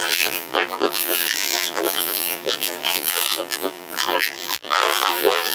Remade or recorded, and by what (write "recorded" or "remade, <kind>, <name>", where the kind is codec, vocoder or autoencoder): remade, vocoder, BigVGAN v2